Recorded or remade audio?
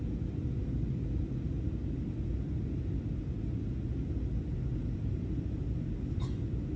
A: recorded